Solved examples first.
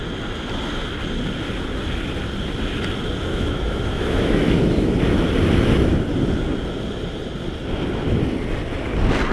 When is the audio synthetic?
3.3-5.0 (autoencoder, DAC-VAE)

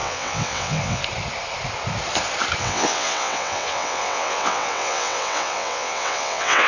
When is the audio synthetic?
0.0-1.0 (vocoder, WaveNeXt); 2.6-6.7

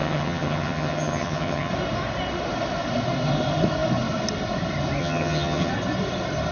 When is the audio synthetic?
0.0-1.7 (vocoder, HiFi-GAN); 5.0-5.7

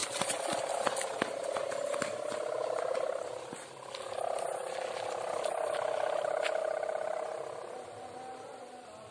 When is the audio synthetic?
6.6-9.1 (vocoder, BigVGAN v2)